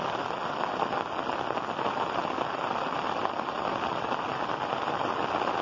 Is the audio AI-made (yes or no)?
no